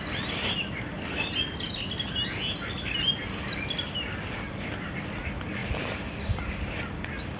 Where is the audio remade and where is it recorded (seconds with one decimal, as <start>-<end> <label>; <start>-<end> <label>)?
0.0-7.4 recorded